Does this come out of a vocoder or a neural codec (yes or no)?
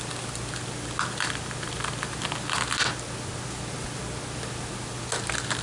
no